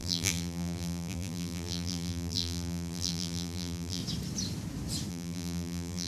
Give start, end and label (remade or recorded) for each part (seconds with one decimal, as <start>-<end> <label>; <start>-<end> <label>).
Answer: 0.0-4.0 remade; 4.0-5.1 recorded; 5.1-6.1 remade